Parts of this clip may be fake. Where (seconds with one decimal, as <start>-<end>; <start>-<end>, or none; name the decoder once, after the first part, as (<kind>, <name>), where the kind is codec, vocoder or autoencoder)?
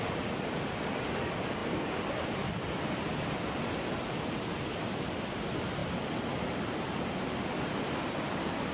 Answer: none